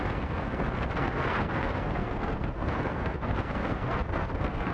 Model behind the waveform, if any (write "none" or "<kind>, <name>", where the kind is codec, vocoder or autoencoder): codec, SNAC